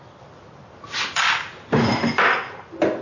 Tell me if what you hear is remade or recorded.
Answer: recorded